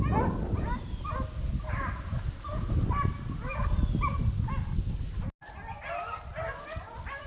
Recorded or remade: recorded